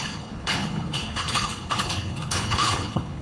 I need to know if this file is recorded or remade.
remade